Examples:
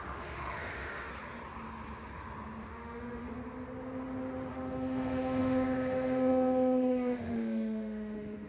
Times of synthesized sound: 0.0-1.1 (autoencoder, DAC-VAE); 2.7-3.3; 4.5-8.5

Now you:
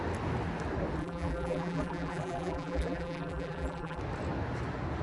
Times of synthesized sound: 1.0-4.0 (vocoder, BigVGAN v2)

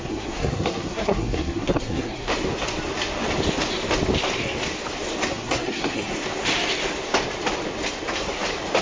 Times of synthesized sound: 0.0-2.3 (codec, SNAC); 5.3-6.1

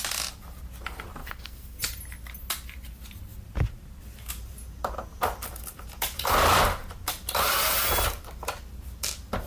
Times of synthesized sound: 1.2-1.8 (codec, SNAC)

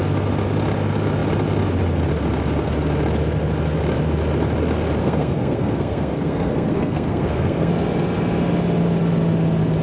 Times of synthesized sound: 5.0-7.7 (codec, SNAC)

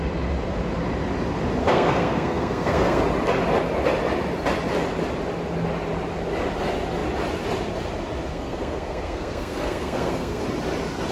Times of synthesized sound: 1.6-3.0 (codec, SNAC); 8.3-10.4